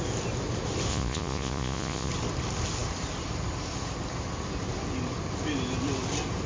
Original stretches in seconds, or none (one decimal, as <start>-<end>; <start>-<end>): 0.0-0.9; 2.1-6.5

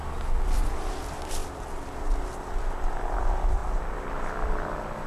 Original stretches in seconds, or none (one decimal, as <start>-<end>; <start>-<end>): 0.0-1.4; 2.0-5.1

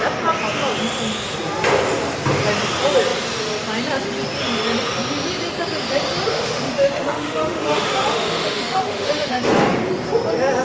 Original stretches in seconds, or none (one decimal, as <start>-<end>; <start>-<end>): 0.0-6.3; 9.4-10.6